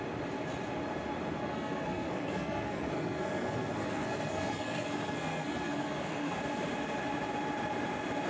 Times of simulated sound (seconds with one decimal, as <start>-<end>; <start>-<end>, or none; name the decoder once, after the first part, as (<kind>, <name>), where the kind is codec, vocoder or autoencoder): 1.4-6.4 (codec, SNAC)